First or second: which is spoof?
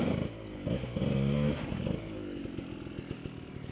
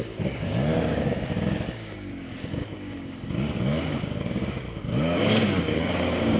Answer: second